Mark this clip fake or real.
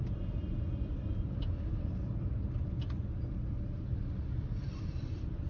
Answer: fake